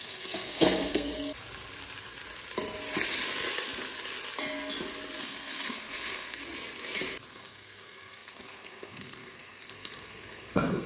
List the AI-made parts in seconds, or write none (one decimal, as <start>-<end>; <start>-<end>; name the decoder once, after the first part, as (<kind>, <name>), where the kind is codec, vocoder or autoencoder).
0.0-1.1 (codec, SNAC); 5.2-6.4; 7.3-10.9